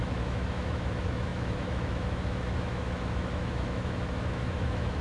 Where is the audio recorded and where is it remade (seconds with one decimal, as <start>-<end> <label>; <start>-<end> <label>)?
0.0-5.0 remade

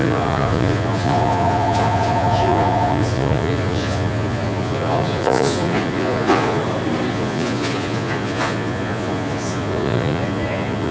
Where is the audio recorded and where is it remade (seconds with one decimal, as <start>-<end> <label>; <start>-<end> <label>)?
0.0-6.6 remade; 6.6-7.1 recorded; 7.1-10.9 remade

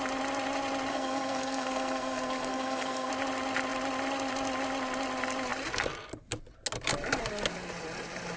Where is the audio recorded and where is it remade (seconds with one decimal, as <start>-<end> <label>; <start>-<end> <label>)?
0.0-0.9 recorded; 0.9-3.1 remade; 3.1-8.4 recorded

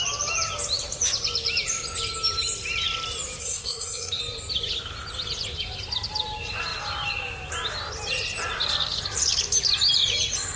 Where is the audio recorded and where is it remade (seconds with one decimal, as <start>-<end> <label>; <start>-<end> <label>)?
0.0-3.4 recorded; 3.4-4.2 remade; 4.2-10.6 recorded